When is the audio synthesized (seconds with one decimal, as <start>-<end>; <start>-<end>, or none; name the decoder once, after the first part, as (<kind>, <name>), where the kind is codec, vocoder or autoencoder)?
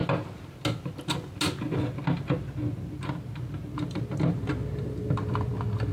none